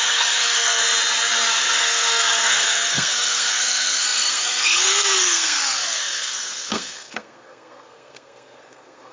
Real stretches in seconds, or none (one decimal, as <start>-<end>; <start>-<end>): 0.8-1.5